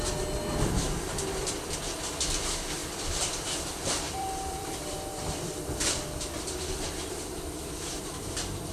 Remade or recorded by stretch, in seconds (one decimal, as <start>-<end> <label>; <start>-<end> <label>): 0.0-2.8 recorded; 2.8-8.0 remade; 8.0-8.7 recorded